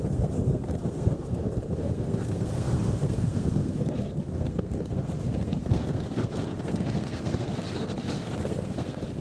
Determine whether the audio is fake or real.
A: fake